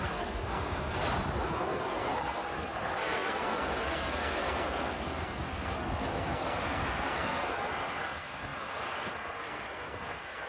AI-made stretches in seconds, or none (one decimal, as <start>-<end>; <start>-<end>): 0.0-1.0; 1.5-10.5